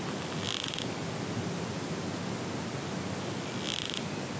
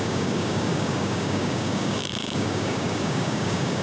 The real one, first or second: first